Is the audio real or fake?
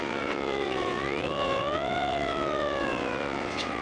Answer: fake